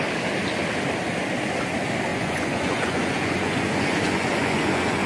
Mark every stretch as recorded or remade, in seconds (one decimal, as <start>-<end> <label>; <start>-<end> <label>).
0.0-2.1 recorded; 2.1-5.1 remade